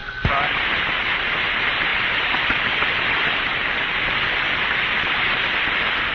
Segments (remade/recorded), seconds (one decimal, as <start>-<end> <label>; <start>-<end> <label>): 0.0-1.0 recorded; 1.0-6.1 remade